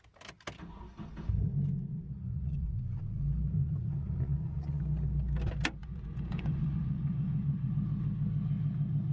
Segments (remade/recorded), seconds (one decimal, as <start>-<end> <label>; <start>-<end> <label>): 0.0-1.9 recorded; 1.9-3.0 remade; 3.0-3.6 recorded; 3.6-4.8 remade; 4.8-5.8 recorded; 5.8-7.7 remade; 7.7-9.1 recorded